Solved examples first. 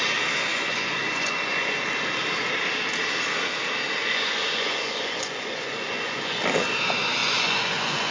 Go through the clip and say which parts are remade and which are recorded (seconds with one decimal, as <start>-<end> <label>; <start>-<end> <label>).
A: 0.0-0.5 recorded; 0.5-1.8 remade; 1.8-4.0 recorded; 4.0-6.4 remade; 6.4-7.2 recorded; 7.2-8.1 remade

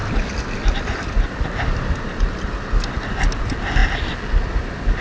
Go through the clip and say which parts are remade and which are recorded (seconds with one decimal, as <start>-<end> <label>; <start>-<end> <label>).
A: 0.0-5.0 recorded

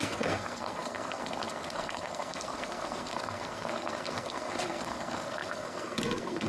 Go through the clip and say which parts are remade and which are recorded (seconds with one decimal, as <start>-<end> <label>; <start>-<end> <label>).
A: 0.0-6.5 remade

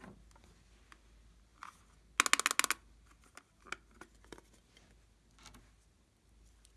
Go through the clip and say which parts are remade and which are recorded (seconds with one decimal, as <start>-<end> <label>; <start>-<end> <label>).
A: 0.0-6.8 recorded

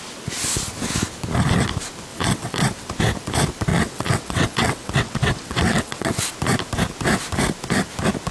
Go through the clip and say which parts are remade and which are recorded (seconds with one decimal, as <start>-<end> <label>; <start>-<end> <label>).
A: 0.0-2.1 recorded; 2.1-2.7 remade; 2.7-3.7 recorded; 3.7-6.3 remade; 6.3-8.3 recorded

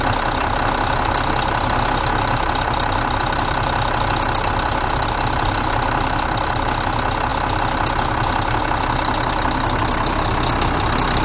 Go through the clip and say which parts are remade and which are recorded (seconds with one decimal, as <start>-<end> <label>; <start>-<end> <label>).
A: 0.0-11.2 recorded

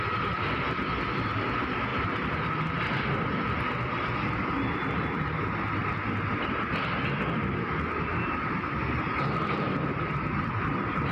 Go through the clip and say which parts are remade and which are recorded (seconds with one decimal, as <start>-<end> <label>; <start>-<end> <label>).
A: 0.0-11.1 recorded